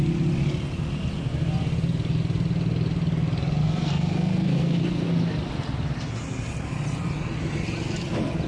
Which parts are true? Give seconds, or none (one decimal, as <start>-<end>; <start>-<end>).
0.0-3.6; 4.8-8.5